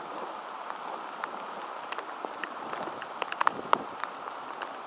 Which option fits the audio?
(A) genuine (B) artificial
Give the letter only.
A